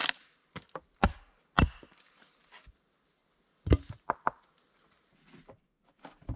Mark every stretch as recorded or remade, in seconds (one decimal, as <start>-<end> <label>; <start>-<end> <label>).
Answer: 0.0-6.4 recorded